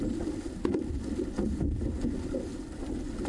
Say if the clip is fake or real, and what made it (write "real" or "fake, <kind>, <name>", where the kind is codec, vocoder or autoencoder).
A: real